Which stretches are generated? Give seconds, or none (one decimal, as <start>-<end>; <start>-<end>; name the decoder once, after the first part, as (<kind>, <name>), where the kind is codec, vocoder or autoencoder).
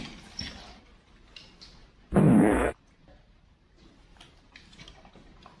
2.2-2.7 (codec, SNAC)